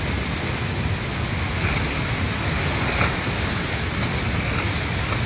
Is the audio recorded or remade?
recorded